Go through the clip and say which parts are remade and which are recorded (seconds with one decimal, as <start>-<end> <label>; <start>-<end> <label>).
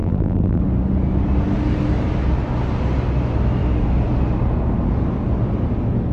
0.0-0.6 remade; 0.6-6.1 recorded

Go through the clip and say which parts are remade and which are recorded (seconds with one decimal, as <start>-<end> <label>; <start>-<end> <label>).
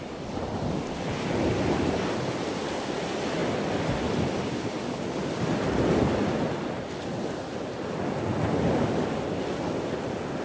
0.0-10.4 recorded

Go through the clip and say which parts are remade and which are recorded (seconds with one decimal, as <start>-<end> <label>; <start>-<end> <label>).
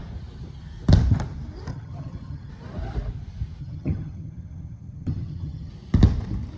0.0-1.7 recorded; 1.7-2.5 remade; 2.5-3.6 recorded; 3.6-5.7 remade; 5.7-6.6 recorded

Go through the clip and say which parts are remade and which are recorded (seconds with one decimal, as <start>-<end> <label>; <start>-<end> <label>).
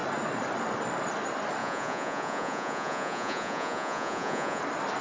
0.0-1.6 recorded; 1.6-4.6 remade; 4.6-5.0 recorded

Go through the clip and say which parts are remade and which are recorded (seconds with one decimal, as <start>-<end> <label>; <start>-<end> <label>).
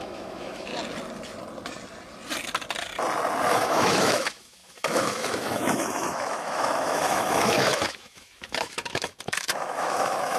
0.0-0.7 remade; 0.7-3.5 recorded; 3.5-10.4 remade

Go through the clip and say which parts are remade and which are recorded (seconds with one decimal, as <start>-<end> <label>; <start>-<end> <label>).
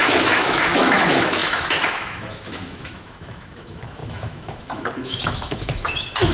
0.0-6.3 remade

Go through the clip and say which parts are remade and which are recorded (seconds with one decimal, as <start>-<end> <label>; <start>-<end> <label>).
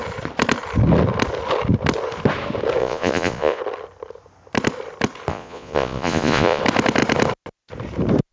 0.0-2.8 recorded; 2.8-3.6 remade; 3.6-5.3 recorded; 5.3-6.6 remade; 6.6-8.3 recorded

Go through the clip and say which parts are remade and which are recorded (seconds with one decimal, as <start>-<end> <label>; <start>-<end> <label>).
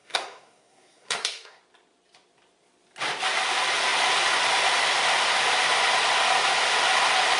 0.0-1.6 remade; 1.6-7.4 recorded